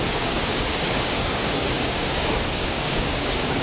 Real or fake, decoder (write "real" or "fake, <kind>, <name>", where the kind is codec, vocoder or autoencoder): fake, codec, DAC